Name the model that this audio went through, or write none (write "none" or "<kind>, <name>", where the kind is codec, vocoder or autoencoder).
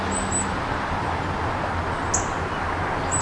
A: none